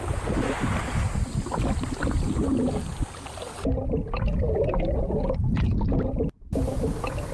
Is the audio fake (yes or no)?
no